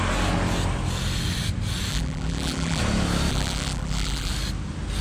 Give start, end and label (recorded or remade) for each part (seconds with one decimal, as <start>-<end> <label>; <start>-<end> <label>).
0.0-1.9 recorded; 1.9-2.8 remade; 2.8-3.3 recorded; 3.3-4.3 remade; 4.3-5.0 recorded